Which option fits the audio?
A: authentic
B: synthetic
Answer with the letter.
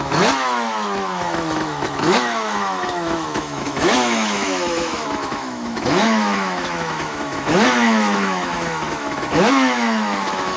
B